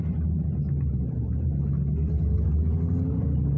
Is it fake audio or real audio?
real